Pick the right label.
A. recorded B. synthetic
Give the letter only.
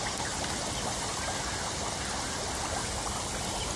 A